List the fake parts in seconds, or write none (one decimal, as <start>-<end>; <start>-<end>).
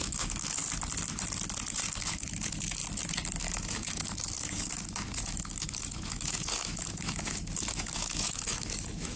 0.0-0.6; 1.7-2.8; 3.4-9.2